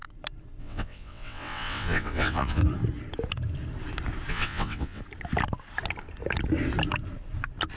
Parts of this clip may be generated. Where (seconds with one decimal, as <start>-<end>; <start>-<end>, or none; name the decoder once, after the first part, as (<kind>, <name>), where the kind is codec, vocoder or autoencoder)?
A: 0.6-2.6 (vocoder, WaveNeXt); 4.3-5.0